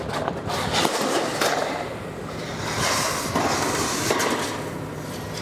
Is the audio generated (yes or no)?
no